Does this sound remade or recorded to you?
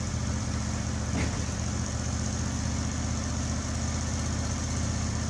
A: recorded